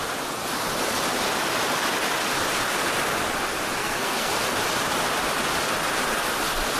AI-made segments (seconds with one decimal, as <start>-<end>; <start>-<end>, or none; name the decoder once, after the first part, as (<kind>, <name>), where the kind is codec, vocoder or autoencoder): 3.8-4.3 (codec, SNAC)